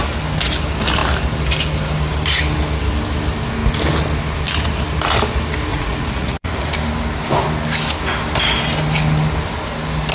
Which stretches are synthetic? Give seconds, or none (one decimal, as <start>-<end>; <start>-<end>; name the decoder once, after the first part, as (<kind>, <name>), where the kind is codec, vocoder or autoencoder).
5.7-6.7 (vocoder, Vocos)